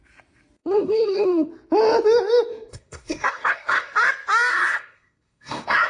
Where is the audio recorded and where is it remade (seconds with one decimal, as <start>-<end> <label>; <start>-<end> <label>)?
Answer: 0.0-0.6 recorded; 0.6-1.5 remade; 1.5-2.5 recorded; 2.5-3.9 remade; 3.9-4.5 recorded; 4.5-5.9 remade